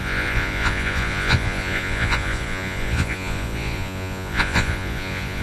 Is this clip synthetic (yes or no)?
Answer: yes